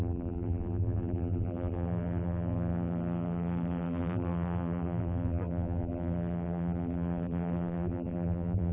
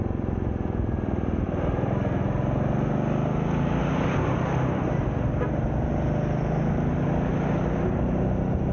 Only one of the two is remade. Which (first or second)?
first